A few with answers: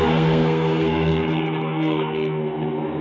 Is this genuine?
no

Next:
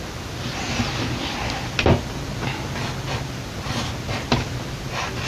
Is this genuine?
yes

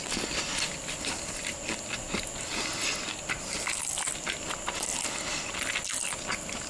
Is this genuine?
yes